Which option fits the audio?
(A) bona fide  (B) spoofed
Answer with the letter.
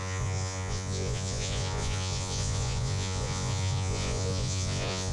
B